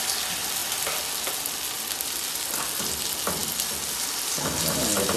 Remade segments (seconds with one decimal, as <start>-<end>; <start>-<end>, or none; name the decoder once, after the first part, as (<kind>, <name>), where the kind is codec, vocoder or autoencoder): none